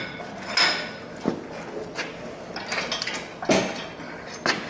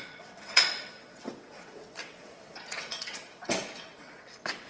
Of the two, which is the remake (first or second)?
second